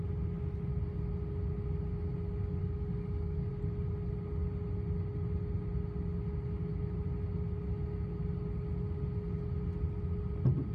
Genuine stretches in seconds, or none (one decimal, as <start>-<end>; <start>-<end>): 0.0-2.6; 3.5-10.7